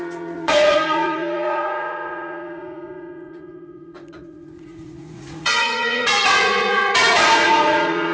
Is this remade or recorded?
remade